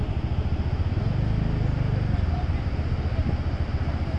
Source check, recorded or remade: recorded